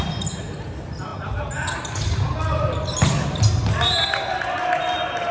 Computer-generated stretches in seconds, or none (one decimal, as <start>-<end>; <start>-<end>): none